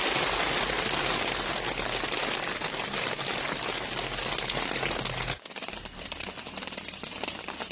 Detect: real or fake real